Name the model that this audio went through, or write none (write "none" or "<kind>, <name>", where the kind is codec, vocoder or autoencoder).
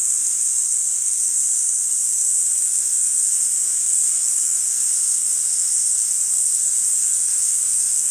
codec, SNAC